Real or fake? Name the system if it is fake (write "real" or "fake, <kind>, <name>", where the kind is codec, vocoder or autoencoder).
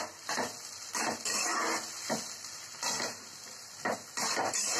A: real